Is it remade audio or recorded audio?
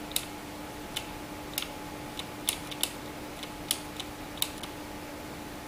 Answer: recorded